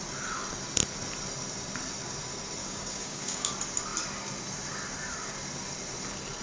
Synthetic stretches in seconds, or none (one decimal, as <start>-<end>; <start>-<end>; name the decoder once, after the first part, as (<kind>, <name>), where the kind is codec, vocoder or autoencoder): 2.6-3.5 (codec, DAC)